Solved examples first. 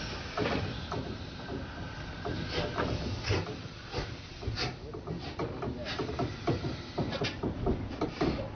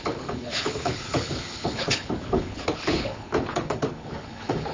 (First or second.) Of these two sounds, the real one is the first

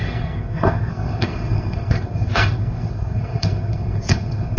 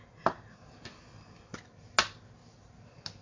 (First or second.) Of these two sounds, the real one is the second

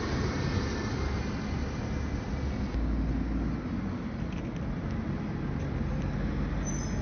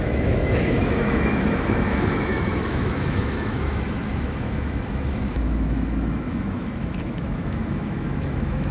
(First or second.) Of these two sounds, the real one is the first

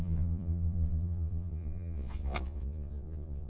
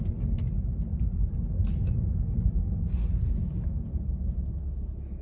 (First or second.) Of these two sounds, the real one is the second